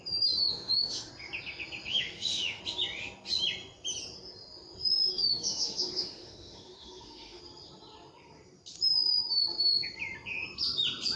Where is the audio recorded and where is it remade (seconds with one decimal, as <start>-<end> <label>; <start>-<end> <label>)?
0.0-0.5 recorded; 0.5-1.1 remade; 1.1-1.9 recorded; 1.9-2.6 remade; 2.6-5.1 recorded; 5.1-7.4 remade; 7.4-11.2 recorded